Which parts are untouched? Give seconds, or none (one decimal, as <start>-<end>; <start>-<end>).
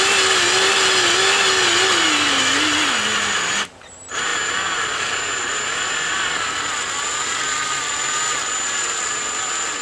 0.0-9.8